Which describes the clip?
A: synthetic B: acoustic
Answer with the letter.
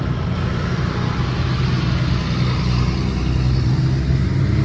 B